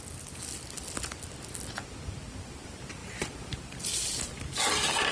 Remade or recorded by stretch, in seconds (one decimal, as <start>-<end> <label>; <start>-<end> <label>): 0.0-5.1 recorded